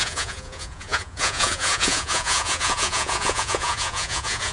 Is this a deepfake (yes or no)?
yes